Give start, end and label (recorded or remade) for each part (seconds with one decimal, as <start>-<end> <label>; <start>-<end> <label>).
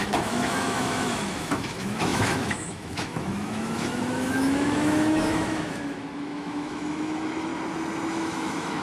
0.0-7.5 remade; 7.5-8.1 recorded; 8.1-8.8 remade